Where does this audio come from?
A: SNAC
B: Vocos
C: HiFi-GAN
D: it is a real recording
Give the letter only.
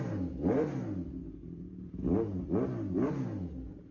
D